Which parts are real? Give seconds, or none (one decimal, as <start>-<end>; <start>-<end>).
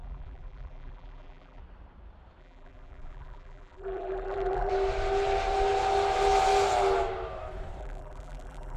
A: 1.6-2.4; 4.7-7.8